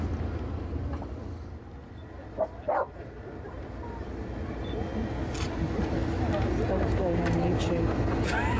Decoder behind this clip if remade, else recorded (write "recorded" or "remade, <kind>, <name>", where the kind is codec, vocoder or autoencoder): recorded